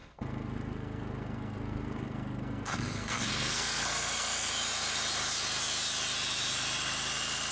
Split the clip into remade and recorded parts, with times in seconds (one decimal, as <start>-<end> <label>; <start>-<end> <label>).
0.0-4.5 remade; 4.5-7.5 recorded